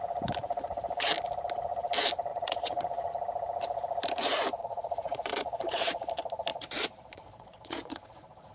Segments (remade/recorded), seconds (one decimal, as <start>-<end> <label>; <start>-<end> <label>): 0.0-2.3 recorded; 2.3-3.1 remade; 3.1-4.6 recorded; 4.6-6.1 remade; 6.1-6.5 recorded; 6.5-8.5 remade

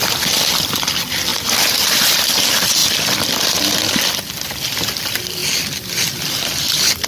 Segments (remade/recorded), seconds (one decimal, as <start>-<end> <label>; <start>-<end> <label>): 0.0-7.1 recorded